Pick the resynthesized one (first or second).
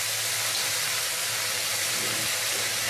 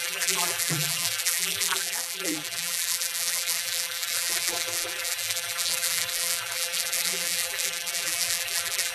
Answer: second